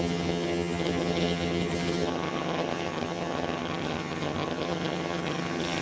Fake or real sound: fake